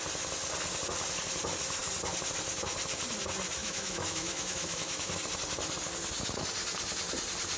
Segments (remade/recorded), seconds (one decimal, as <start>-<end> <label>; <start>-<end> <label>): 0.0-3.6 recorded; 3.6-5.1 remade; 5.1-7.6 recorded